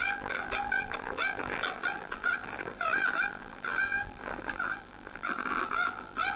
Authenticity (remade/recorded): remade